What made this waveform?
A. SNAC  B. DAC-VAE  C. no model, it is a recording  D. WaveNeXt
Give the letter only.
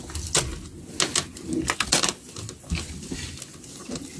C